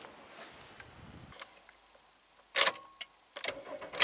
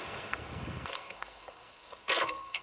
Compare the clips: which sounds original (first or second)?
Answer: first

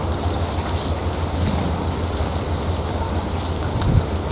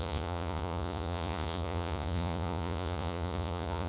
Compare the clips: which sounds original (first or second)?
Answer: first